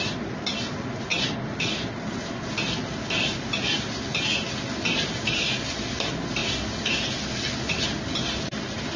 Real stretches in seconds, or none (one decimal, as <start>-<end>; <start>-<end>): 0.0-9.0